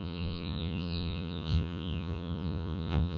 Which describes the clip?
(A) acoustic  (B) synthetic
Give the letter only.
B